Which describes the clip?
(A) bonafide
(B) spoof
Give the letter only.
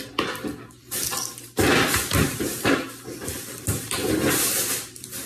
B